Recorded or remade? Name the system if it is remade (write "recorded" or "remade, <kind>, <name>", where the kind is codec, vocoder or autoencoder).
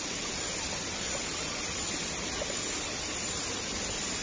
recorded